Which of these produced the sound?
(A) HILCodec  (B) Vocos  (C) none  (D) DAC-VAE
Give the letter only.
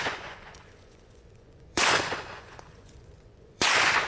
B